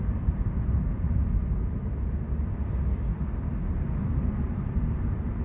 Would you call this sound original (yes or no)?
yes